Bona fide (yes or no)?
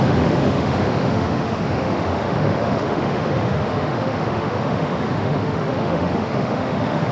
no